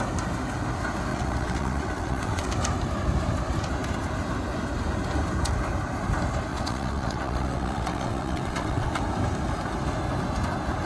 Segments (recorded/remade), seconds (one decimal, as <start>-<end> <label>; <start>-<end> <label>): 0.0-1.1 recorded; 1.1-2.5 remade; 2.5-6.5 recorded; 6.5-9.0 remade; 9.0-10.9 recorded